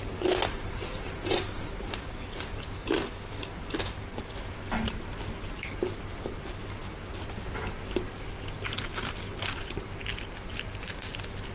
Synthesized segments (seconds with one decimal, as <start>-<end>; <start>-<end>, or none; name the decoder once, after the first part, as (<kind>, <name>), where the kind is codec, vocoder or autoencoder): none

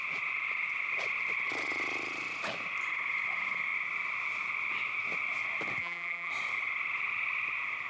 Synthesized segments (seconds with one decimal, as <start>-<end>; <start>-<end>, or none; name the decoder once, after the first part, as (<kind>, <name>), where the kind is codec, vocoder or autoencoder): 5.8-6.3 (vocoder, BigVGAN v2)

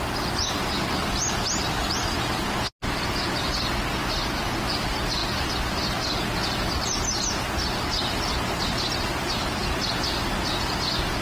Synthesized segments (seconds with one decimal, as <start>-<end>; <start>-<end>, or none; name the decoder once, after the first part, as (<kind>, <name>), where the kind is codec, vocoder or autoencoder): none